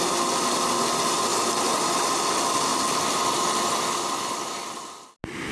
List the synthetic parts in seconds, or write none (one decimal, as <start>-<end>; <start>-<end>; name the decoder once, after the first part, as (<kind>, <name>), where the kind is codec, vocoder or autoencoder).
1.3-2.2 (vocoder, BigVGAN v2)